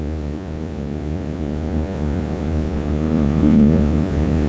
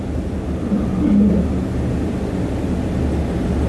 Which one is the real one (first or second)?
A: second